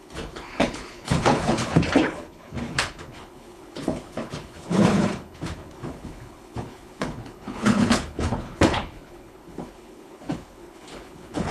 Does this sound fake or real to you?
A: fake